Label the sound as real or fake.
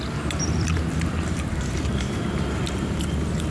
fake